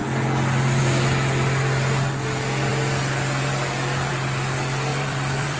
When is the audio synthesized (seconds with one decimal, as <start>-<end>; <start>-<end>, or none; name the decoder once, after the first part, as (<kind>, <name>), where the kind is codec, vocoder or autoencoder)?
4.9-5.6 (vocoder, BigVGAN v2)